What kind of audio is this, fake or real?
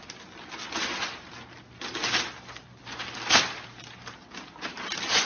real